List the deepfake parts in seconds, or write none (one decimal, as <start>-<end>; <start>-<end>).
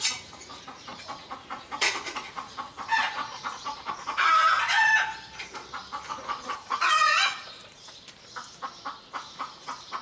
0.0-4.9; 6.1-7.6; 9.4-10.0